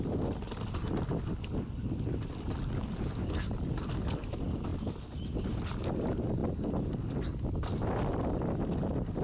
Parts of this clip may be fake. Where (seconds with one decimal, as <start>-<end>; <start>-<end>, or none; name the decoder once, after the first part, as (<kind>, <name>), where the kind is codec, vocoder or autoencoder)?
none